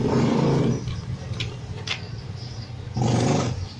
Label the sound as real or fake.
real